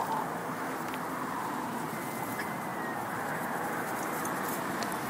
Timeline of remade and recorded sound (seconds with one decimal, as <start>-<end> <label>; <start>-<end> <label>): 0.0-0.4 recorded; 0.4-0.9 remade; 0.9-5.1 recorded